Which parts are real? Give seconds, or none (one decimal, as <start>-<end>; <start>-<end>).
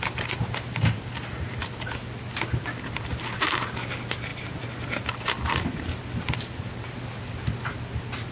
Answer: 0.0-8.3